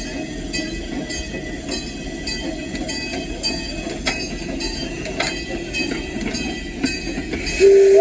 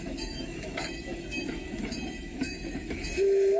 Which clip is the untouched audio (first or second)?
first